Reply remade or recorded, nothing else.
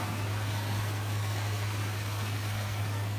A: remade